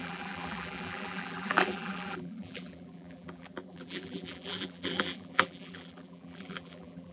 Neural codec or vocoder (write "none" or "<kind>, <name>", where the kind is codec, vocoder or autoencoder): vocoder, BigVGAN v2